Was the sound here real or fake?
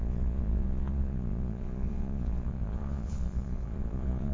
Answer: fake